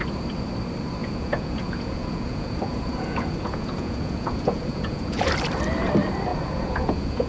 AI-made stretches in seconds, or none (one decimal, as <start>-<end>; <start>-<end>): 1.0-5.3; 6.3-7.3